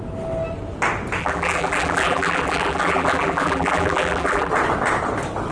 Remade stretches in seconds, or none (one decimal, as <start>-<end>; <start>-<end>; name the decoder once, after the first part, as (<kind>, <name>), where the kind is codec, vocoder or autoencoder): 1.2-4.5 (vocoder, BigVGAN v2)